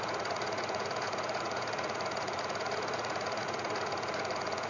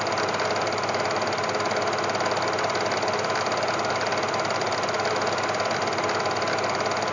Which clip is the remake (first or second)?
first